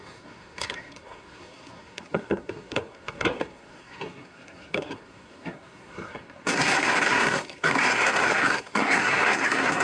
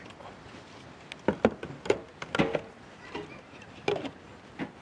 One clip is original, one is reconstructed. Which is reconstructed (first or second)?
first